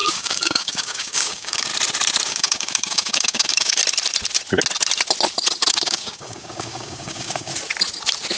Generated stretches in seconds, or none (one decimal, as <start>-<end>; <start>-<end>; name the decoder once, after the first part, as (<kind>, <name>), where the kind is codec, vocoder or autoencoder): 0.0-1.7 (codec, DAC); 2.3-3.8; 5.7-7.5